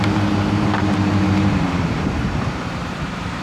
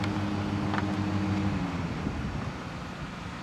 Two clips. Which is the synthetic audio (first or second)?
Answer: first